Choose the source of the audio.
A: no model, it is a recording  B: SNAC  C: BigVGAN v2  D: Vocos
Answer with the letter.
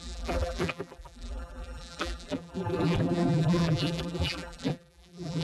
C